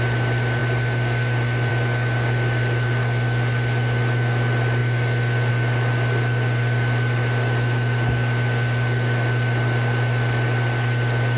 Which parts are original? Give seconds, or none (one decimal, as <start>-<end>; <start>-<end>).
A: 0.0-11.4